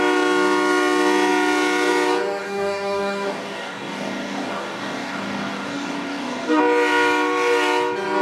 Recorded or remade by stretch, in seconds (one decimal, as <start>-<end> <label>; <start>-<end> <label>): 0.0-2.4 recorded; 2.4-6.6 remade; 6.6-8.2 recorded